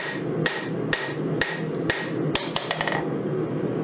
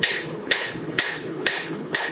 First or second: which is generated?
second